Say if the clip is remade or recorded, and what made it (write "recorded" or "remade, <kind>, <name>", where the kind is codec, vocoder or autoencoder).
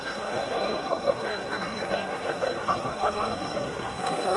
remade, codec, SNAC